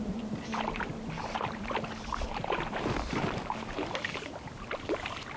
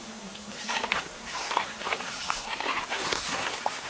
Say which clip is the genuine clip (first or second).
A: first